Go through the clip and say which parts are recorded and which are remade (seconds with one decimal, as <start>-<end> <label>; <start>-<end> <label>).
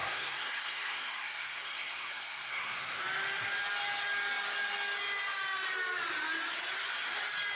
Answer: 0.0-3.0 remade; 3.0-7.5 recorded